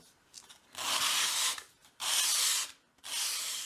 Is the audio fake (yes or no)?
no